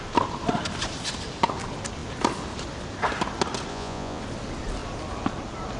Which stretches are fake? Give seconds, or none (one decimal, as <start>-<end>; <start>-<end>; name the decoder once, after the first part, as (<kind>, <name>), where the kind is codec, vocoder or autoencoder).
3.7-4.2 (vocoder, Vocos)